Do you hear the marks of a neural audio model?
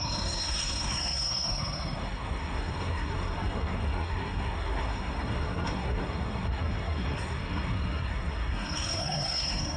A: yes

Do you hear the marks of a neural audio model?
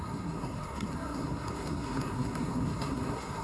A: yes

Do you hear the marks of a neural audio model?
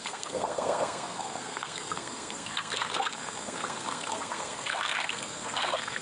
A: yes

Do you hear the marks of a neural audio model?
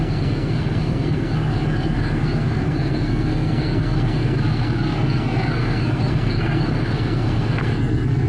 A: yes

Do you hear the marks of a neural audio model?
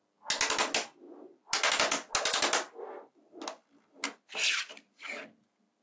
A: no